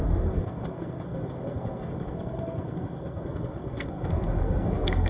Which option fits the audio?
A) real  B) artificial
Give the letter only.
B